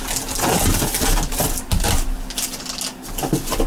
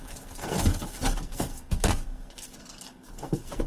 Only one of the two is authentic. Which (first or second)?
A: first